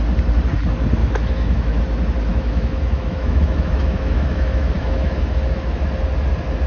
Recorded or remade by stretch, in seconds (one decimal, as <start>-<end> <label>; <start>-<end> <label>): 0.0-1.0 recorded; 1.0-1.8 remade; 1.8-2.3 recorded; 2.3-5.8 remade; 5.8-6.7 recorded